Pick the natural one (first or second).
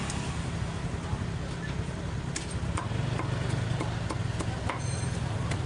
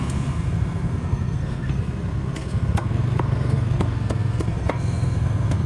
first